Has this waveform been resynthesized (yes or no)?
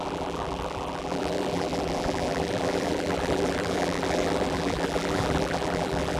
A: yes